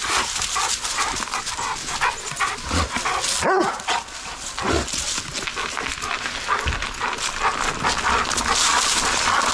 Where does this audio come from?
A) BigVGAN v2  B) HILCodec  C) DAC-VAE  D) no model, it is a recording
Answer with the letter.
D